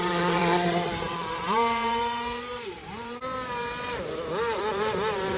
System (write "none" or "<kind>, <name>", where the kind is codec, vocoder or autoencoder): vocoder, BigVGAN v2